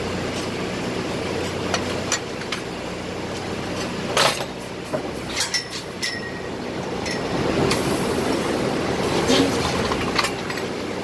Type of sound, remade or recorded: recorded